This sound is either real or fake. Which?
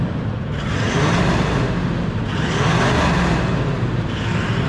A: real